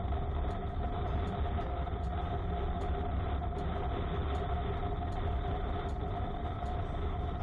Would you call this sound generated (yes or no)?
no